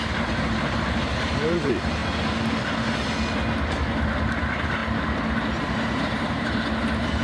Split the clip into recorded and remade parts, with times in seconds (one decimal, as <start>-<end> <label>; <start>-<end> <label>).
0.0-2.0 remade; 2.0-3.7 recorded; 3.7-4.8 remade; 4.8-5.6 recorded; 5.6-7.2 remade